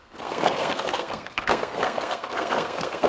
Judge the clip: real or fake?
fake